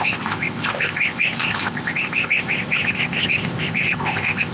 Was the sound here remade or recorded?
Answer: remade